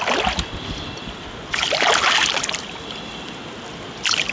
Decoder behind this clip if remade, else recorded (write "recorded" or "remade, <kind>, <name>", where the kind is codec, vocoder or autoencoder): recorded